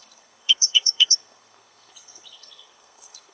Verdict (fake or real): fake